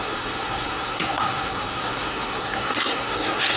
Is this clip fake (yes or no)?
yes